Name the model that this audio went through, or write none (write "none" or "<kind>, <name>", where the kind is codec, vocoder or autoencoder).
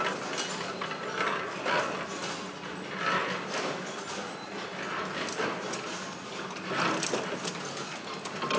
none